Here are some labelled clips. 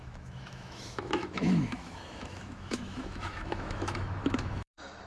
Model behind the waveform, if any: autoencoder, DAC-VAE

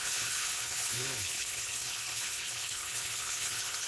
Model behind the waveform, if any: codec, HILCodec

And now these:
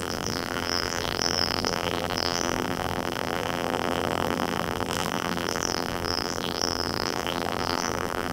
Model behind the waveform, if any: vocoder, BigVGAN v2